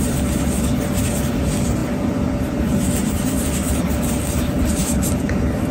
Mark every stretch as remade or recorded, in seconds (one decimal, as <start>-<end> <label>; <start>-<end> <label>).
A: 0.0-3.0 recorded; 3.0-3.8 remade; 3.8-4.8 recorded; 4.8-5.7 remade